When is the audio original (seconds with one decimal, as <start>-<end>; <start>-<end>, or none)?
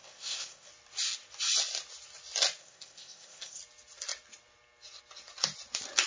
0.7-2.6; 3.6-6.1